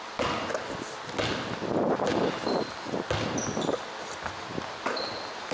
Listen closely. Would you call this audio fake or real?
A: real